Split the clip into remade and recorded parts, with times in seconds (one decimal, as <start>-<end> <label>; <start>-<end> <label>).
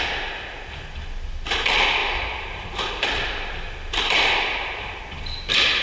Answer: 0.0-2.0 recorded; 2.0-5.0 remade; 5.0-5.8 recorded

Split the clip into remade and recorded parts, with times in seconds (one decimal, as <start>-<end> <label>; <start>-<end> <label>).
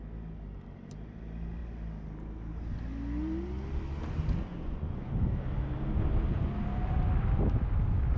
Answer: 0.0-4.5 recorded; 4.5-5.1 remade; 5.1-8.2 recorded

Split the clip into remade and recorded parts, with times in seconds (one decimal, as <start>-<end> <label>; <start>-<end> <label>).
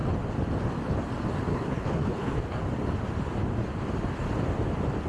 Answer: 0.0-1.5 recorded; 1.5-2.6 remade; 2.6-5.1 recorded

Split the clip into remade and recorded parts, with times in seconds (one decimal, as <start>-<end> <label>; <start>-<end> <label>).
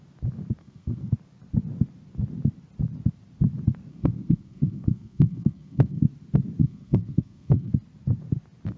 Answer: 0.0-0.6 recorded; 0.6-1.1 remade; 1.1-3.9 recorded; 3.9-6.0 remade; 6.0-6.6 recorded; 6.6-7.7 remade; 7.7-8.8 recorded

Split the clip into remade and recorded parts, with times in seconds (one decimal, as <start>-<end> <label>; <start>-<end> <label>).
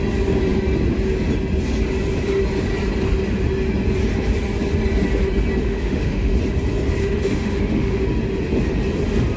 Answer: 0.0-5.6 recorded; 5.6-6.3 remade; 6.3-7.0 recorded; 7.0-8.0 remade; 8.0-9.4 recorded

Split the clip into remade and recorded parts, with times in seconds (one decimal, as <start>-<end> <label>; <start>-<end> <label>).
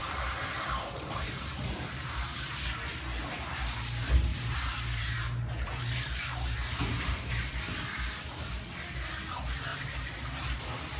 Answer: 0.0-1.9 remade; 1.9-4.3 recorded; 4.3-7.3 remade; 7.3-11.0 recorded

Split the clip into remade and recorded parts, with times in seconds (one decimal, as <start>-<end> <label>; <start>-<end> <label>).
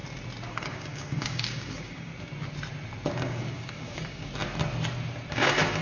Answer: 0.0-0.5 recorded; 0.5-2.1 remade; 2.1-3.1 recorded; 3.1-4.3 remade; 4.3-5.3 recorded; 5.3-5.8 remade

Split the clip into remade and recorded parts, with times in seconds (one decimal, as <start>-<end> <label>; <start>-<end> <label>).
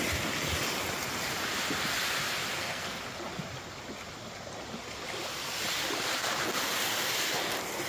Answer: 0.0-2.5 recorded; 2.5-3.0 remade; 3.0-7.9 recorded